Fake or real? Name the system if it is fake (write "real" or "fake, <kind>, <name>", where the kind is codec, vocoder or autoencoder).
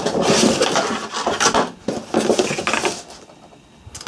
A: real